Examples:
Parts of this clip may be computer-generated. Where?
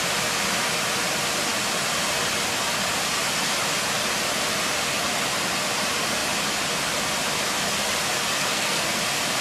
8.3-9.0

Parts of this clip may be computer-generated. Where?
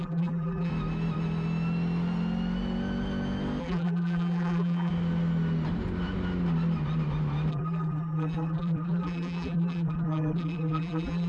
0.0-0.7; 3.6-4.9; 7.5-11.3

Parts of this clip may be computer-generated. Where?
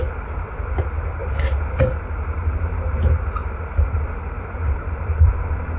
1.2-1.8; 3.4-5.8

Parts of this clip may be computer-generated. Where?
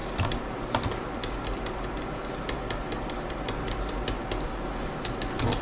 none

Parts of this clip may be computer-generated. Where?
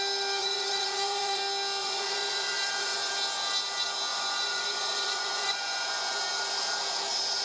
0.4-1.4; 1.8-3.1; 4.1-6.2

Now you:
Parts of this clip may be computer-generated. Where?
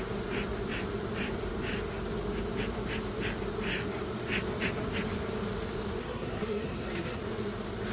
6.0-7.2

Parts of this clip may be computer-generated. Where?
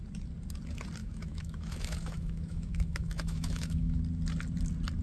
1.0-4.0